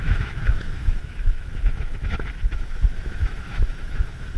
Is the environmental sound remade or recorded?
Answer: remade